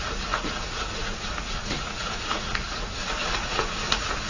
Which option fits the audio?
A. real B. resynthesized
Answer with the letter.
B